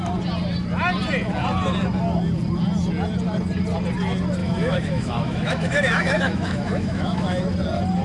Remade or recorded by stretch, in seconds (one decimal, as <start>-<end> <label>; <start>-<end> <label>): 0.0-4.4 recorded; 4.4-7.4 remade; 7.4-8.0 recorded

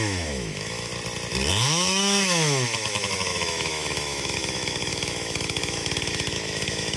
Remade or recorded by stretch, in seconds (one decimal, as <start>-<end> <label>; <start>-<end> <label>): 0.0-0.9 remade; 0.9-1.5 recorded; 1.5-7.0 remade

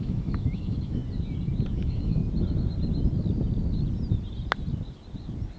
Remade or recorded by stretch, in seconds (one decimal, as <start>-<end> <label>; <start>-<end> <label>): 0.0-1.0 remade; 1.0-1.7 recorded; 1.7-2.2 remade; 2.2-5.6 recorded

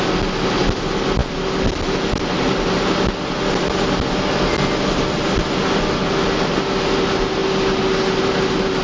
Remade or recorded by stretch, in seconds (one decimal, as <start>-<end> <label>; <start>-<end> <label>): 0.0-8.8 recorded

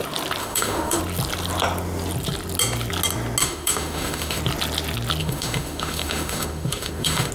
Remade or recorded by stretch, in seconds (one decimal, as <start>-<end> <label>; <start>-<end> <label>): 0.0-0.4 recorded; 0.4-1.0 remade; 1.0-3.4 recorded; 3.4-4.4 remade; 4.4-5.2 recorded; 5.2-7.3 remade

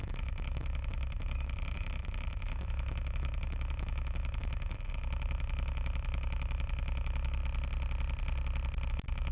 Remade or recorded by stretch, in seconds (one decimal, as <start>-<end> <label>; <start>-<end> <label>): 0.0-7.4 remade; 7.4-8.9 recorded; 8.9-9.3 remade